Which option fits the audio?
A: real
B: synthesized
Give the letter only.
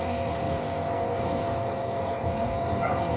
B